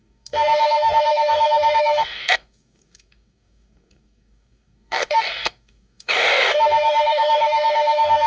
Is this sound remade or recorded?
remade